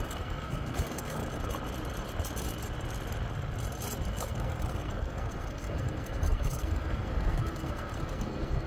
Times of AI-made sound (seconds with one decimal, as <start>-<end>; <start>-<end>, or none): 0.0-1.2; 4.1-8.7